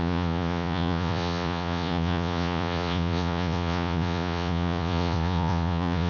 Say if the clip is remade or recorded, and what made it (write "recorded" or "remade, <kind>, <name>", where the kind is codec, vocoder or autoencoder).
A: remade, vocoder, Vocos